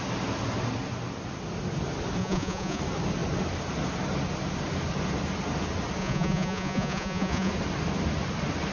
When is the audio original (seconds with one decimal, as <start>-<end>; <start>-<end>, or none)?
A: 0.0-2.2; 2.8-6.0; 7.5-8.7